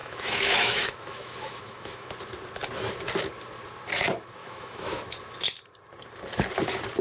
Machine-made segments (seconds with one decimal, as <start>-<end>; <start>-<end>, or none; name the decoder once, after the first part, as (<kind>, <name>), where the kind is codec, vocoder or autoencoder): 0.0-2.1 (autoencoder, DAC-VAE); 4.4-5.0